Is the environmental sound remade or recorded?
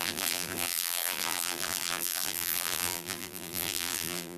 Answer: remade